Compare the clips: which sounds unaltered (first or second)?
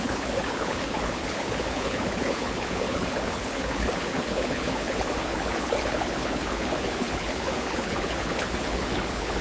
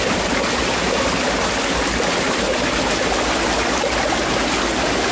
second